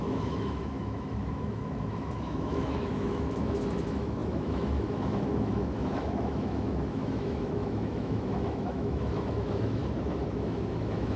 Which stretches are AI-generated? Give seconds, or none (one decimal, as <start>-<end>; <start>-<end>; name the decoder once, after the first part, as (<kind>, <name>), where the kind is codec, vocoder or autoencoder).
0.0-9.8 (autoencoder, DAC-VAE); 10.3-11.2